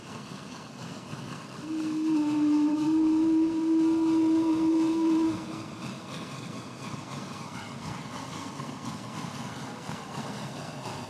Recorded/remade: remade